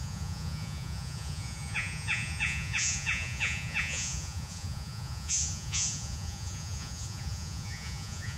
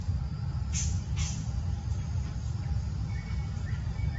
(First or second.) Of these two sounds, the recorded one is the second